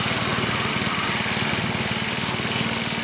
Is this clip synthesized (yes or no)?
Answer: no